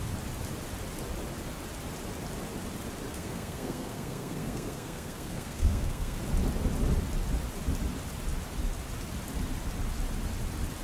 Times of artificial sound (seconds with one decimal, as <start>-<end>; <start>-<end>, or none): 3.1-6.2